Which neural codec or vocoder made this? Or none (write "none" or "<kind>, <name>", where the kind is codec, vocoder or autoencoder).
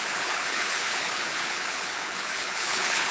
codec, HILCodec